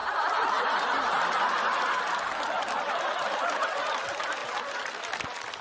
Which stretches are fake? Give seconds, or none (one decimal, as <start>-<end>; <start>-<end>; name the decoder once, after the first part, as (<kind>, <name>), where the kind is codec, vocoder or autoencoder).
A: none